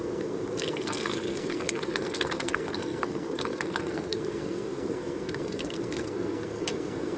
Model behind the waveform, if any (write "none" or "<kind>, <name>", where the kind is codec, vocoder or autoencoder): codec, SNAC